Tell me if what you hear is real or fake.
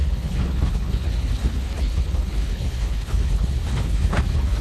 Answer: fake